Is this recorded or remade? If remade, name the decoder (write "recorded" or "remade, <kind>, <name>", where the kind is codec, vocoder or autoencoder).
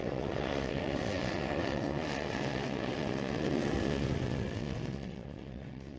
remade, vocoder, WaveNeXt